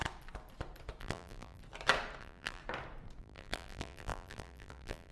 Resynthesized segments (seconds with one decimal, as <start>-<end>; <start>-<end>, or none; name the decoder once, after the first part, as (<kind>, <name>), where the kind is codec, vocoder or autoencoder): 1.0-1.6 (vocoder, BigVGAN v2); 2.2-2.6; 3.2-5.1